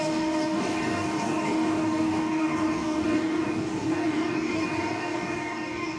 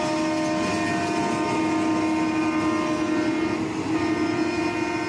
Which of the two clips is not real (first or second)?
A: first